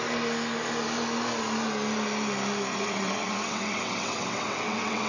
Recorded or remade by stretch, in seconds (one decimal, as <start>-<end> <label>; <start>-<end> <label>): 0.0-2.7 recorded; 2.7-5.1 remade